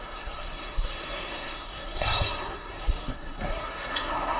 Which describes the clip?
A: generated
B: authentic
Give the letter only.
A